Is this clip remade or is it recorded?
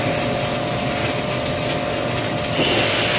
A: recorded